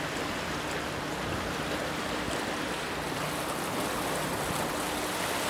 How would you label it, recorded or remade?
recorded